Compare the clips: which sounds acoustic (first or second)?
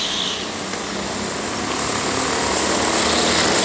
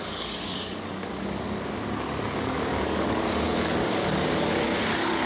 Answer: first